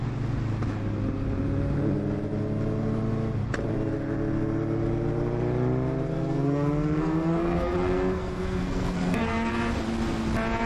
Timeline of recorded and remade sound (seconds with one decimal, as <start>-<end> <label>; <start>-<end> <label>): 0.0-6.2 recorded; 6.2-9.5 remade; 9.5-10.7 recorded